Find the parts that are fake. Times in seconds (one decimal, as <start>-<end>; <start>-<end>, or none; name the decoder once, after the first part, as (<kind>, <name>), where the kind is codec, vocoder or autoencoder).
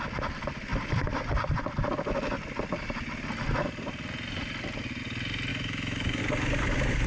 5.5-6.2 (autoencoder, DAC-VAE)